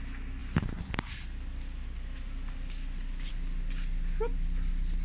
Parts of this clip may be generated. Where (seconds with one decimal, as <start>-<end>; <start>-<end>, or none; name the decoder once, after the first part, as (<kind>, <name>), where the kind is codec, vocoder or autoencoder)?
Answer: none